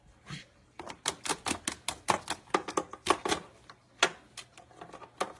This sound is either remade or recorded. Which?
recorded